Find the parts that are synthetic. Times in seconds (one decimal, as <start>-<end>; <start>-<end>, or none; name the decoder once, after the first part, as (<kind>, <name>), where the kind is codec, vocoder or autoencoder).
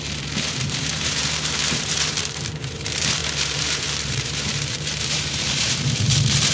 0.0-6.5 (vocoder, BigVGAN v2)